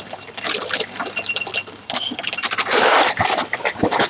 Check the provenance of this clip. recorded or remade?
recorded